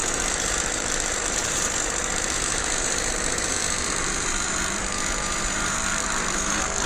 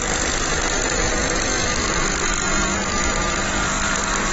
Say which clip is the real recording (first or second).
second